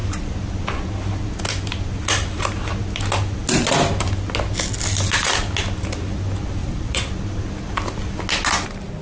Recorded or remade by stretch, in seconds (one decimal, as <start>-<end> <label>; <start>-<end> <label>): 0.0-6.6 recorded; 6.6-7.1 remade; 7.1-9.0 recorded